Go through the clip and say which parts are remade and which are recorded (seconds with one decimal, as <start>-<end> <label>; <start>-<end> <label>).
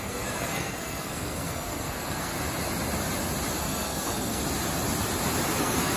0.0-2.3 remade; 2.3-3.6 recorded; 3.6-4.4 remade; 4.4-5.6 recorded; 5.6-6.0 remade